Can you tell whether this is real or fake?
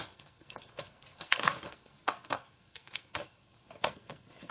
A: fake